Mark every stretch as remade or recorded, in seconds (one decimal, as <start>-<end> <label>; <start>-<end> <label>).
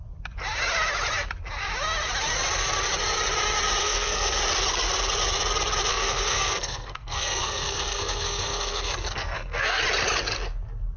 0.0-3.8 recorded; 3.8-4.4 remade; 4.4-5.9 recorded; 5.9-9.8 remade; 9.8-11.0 recorded